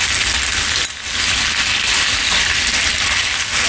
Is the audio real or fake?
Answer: real